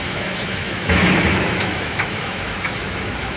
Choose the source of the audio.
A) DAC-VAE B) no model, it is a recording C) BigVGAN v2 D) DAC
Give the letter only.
A